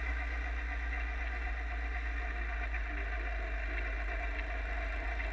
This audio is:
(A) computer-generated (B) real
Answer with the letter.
B